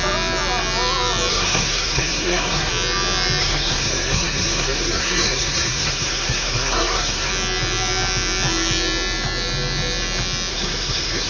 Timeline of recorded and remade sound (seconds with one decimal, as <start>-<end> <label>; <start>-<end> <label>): 0.0-1.3 recorded; 1.3-2.7 remade; 2.7-3.4 recorded; 3.4-7.3 remade; 7.3-10.5 recorded; 10.5-11.3 remade